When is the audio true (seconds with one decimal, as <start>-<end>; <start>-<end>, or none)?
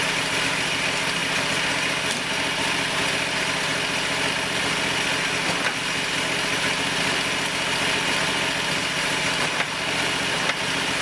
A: 0.0-11.0